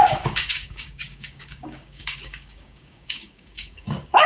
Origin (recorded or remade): remade